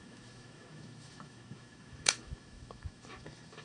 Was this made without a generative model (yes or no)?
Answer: no